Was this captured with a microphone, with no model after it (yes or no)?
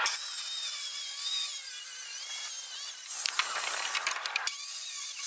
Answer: yes